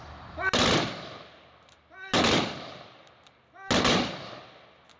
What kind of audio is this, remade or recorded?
recorded